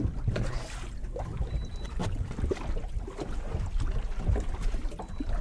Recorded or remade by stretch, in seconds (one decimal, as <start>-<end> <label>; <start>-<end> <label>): 0.0-5.4 recorded